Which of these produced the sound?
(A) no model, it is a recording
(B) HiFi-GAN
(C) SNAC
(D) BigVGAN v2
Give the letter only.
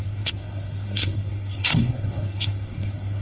C